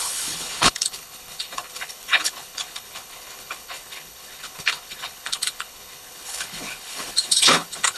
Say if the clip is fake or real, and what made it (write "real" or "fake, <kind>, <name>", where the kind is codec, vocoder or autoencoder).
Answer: fake, codec, HILCodec